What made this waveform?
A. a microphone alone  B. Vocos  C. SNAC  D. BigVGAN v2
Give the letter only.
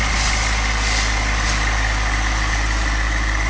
A